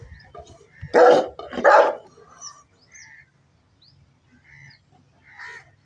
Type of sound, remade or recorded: recorded